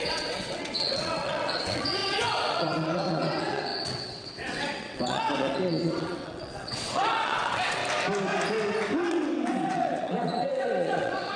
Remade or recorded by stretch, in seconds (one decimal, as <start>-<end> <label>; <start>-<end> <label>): 0.0-7.8 remade; 7.8-9.1 recorded; 9.1-11.4 remade